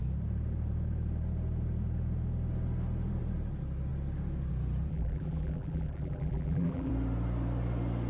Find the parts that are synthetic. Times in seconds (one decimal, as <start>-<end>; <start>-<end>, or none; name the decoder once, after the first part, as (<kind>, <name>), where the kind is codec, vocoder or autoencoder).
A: 4.9-6.9 (vocoder, BigVGAN v2)